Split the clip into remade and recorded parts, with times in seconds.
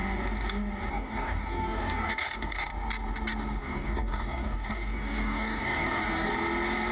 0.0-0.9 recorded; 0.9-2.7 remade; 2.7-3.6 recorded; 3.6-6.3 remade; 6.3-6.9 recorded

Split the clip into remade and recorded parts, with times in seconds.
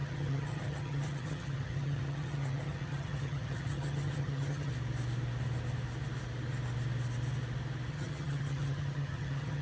0.0-4.7 remade; 4.7-7.9 recorded; 7.9-9.6 remade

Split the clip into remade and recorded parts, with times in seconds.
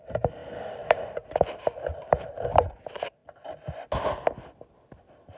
0.0-3.2 remade; 3.2-5.4 recorded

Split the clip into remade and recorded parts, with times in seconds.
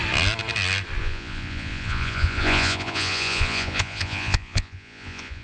0.0-1.0 recorded; 1.0-5.4 remade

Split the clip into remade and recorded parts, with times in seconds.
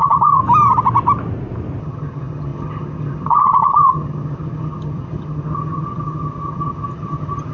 0.0-0.4 remade; 0.4-1.8 recorded; 1.8-7.5 remade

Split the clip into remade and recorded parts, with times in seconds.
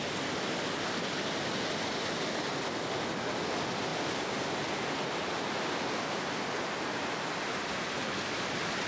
0.0-8.9 recorded